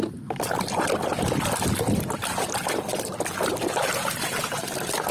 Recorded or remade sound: recorded